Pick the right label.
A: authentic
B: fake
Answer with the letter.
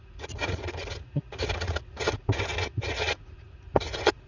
B